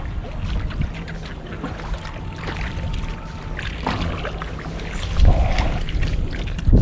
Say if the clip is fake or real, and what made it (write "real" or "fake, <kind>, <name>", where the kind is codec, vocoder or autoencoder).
real